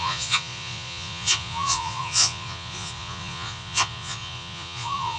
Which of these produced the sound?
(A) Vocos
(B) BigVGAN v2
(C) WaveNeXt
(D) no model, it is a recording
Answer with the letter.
A